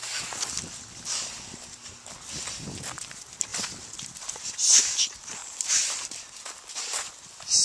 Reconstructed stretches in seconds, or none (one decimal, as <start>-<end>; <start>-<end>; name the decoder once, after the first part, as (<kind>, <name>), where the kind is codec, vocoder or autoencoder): 3.5-4.8 (vocoder, BigVGAN v2)